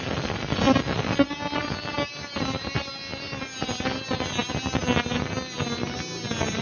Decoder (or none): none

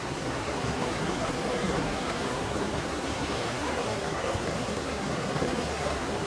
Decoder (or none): codec, SNAC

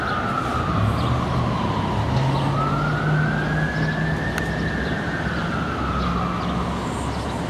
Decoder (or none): none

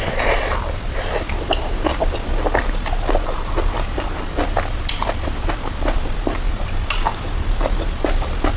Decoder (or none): none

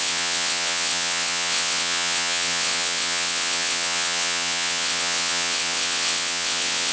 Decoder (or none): vocoder, WaveNeXt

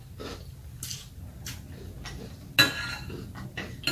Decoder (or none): none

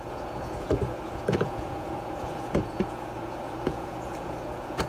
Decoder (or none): vocoder, Vocos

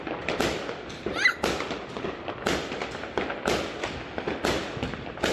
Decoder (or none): none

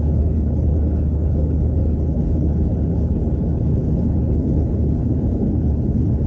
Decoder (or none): codec, HILCodec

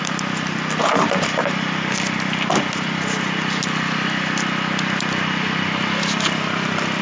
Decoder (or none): none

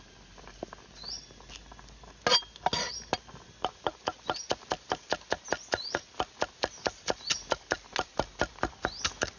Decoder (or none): none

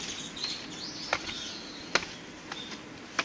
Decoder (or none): none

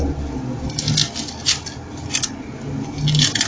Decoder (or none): none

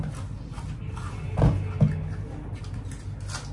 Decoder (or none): none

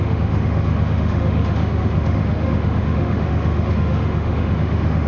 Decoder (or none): autoencoder, DAC-VAE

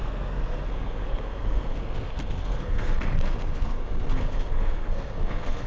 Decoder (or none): codec, SNAC